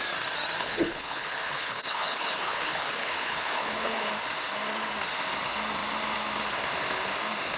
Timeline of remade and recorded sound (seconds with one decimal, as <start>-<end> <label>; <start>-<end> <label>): 0.0-0.6 recorded; 0.6-4.1 remade; 4.1-7.6 recorded